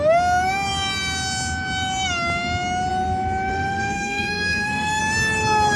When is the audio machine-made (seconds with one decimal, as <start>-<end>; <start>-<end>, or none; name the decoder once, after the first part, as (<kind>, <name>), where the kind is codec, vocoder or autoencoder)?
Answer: 3.5-5.0 (codec, SNAC)